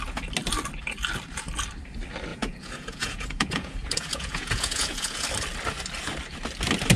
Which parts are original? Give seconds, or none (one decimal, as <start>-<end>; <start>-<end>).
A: 0.0-2.3; 5.3-7.0